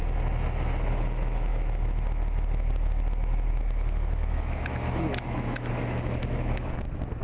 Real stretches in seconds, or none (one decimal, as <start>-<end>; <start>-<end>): 0.0-0.9